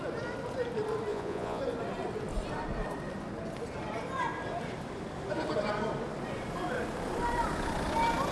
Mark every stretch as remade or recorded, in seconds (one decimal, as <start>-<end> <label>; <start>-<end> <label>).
0.0-1.1 recorded; 1.1-1.6 remade; 1.6-8.3 recorded